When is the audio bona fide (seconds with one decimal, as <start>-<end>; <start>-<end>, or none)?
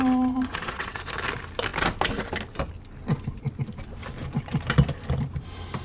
0.0-0.5; 1.0-5.8